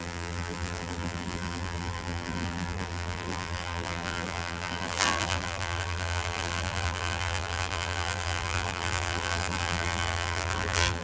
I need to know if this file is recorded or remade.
remade